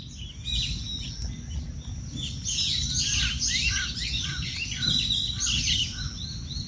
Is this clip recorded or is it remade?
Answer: recorded